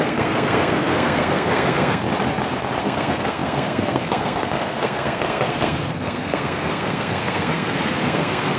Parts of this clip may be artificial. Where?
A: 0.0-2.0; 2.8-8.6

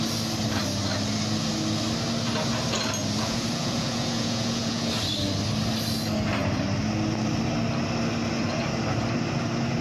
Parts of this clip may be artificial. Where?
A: 3.2-4.9

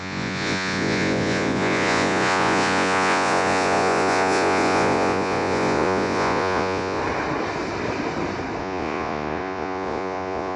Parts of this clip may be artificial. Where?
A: 0.0-7.0; 8.6-10.6

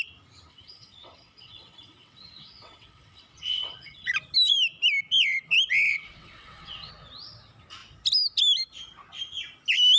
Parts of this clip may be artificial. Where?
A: 0.5-4.1; 5.9-6.9

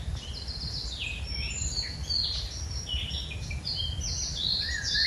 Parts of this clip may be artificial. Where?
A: none

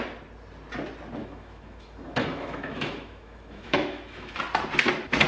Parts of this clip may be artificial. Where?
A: 1.2-4.4